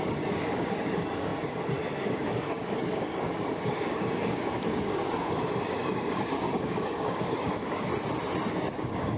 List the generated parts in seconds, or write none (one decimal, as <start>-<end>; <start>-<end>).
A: 0.0-7.9; 8.5-9.2